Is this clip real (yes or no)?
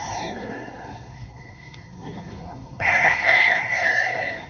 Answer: no